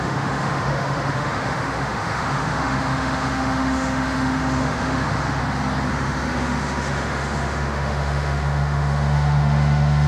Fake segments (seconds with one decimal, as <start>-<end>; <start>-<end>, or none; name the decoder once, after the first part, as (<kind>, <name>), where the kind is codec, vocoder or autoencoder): 0.0-5.4 (autoencoder, DAC-VAE); 5.9-10.1